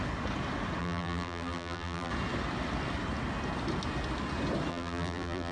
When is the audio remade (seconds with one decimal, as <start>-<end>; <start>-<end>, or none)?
0.8-2.1; 4.7-5.5